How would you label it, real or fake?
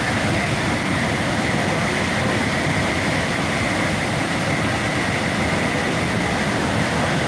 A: real